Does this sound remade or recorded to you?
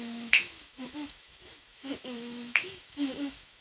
remade